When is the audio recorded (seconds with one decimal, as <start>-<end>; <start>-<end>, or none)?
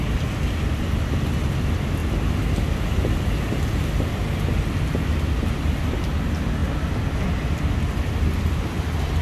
0.0-9.2